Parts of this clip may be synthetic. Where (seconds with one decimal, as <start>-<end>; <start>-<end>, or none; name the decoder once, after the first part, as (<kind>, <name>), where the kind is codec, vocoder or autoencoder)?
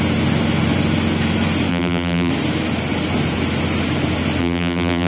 1.7-2.3 (vocoder, BigVGAN v2); 4.4-5.1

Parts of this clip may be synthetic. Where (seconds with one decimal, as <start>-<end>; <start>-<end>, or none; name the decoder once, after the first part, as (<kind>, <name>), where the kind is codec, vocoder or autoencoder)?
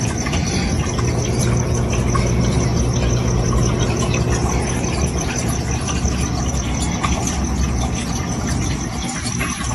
none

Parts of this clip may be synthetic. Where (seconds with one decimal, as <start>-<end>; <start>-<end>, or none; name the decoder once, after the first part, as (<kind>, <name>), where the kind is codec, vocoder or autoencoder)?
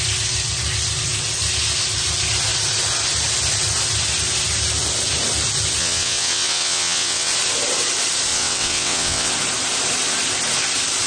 5.8-7.3 (vocoder, WaveNeXt); 8.3-9.3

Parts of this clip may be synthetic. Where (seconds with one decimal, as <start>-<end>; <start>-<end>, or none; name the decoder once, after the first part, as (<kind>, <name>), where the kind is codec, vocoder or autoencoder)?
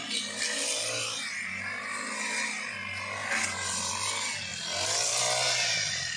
none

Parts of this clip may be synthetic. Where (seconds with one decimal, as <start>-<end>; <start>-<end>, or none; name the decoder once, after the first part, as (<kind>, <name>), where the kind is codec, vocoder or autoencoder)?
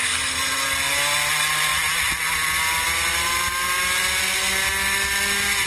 none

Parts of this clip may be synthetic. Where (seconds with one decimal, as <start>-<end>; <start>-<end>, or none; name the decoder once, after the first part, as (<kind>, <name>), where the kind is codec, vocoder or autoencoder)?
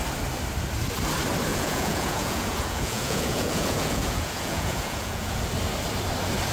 1.5-5.4 (vocoder, Vocos)